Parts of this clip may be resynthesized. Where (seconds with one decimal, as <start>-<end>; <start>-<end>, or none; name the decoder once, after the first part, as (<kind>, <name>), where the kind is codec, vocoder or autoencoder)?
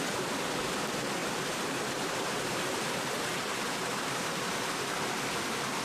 1.2-4.7 (vocoder, BigVGAN v2)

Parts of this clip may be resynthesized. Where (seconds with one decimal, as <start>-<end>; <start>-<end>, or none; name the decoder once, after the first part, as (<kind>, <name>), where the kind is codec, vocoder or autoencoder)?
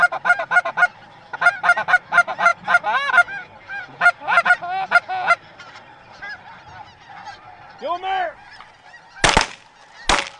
none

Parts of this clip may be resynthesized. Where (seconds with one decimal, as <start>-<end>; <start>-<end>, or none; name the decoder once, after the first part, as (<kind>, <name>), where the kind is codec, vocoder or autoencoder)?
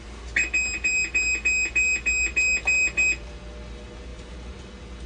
4.1-4.6 (vocoder, BigVGAN v2)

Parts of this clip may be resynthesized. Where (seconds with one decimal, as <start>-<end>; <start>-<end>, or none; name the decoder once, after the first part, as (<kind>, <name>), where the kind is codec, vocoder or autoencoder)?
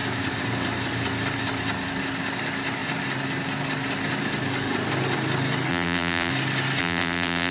5.7-6.3 (vocoder, BigVGAN v2); 6.8-7.5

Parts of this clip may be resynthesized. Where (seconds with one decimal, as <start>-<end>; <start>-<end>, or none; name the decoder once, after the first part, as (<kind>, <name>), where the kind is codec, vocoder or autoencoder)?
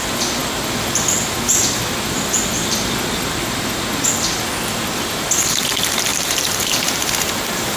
6.1-7.1 (vocoder, BigVGAN v2)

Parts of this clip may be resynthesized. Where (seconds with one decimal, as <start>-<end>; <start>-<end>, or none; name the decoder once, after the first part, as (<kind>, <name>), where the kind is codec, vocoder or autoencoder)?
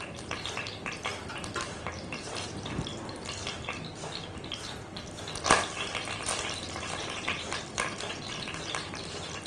0.0-1.1 (vocoder, BigVGAN v2); 1.7-2.9; 8.1-9.5